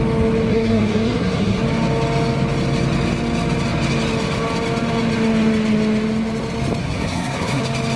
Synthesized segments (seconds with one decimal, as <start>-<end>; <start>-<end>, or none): 0.5-1.6; 6.8-7.6